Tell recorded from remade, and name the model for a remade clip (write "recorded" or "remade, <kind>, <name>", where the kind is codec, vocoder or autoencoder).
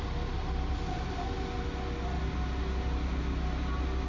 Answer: recorded